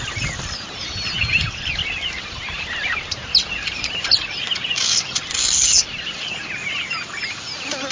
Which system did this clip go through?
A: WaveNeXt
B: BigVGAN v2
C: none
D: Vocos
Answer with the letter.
C